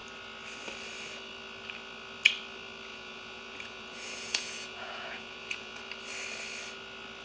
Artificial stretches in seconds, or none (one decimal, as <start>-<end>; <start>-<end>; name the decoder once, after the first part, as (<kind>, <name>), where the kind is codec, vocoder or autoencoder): 2.9-5.8 (vocoder, Vocos)